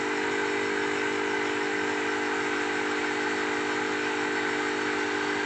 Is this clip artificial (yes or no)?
no